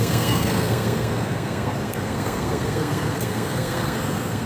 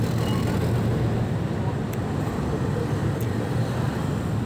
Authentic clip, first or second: second